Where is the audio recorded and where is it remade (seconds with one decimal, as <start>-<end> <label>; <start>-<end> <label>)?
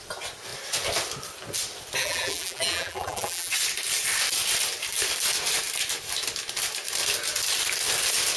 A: 0.0-2.0 recorded; 2.0-3.5 remade; 3.5-8.4 recorded